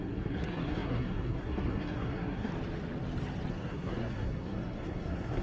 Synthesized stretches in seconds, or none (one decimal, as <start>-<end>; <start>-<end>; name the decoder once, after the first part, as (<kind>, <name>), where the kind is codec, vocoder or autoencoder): 0.0-2.5 (codec, SNAC); 3.5-5.4